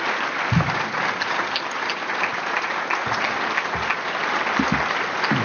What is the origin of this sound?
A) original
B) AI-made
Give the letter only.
A